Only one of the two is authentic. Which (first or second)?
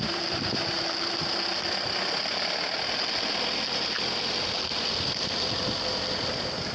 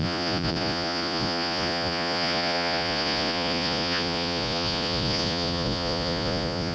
first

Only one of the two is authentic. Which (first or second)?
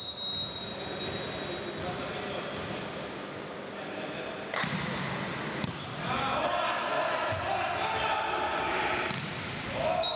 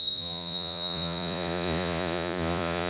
first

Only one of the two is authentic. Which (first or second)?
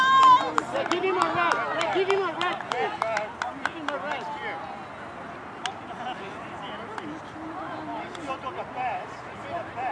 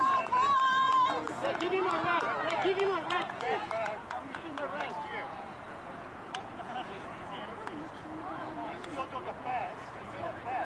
first